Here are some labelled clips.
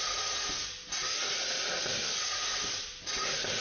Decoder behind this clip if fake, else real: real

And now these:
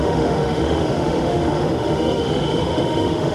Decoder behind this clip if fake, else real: fake, autoencoder, DAC-VAE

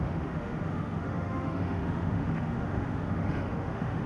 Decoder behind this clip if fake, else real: fake, autoencoder, DAC-VAE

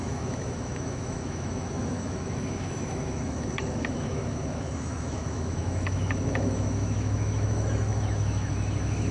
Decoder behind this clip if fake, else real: fake, autoencoder, DAC-VAE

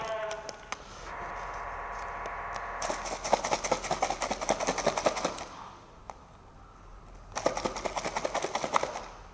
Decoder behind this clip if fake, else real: real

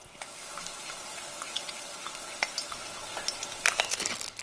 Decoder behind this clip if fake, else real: real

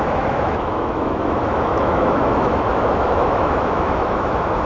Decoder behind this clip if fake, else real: fake, autoencoder, DAC-VAE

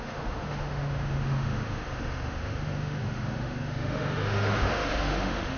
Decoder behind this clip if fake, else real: fake, autoencoder, DAC-VAE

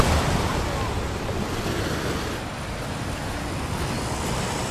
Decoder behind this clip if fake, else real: real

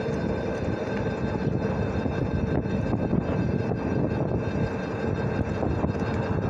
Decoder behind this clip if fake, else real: real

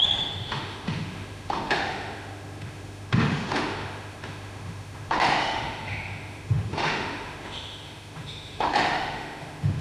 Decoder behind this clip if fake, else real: fake, autoencoder, DAC-VAE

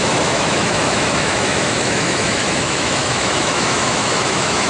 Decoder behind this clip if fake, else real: fake, autoencoder, DAC-VAE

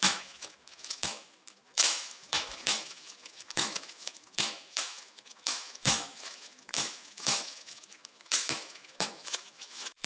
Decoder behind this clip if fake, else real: fake, autoencoder, DAC-VAE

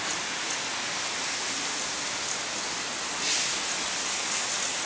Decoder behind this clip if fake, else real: real